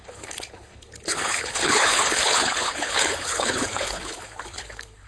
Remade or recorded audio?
remade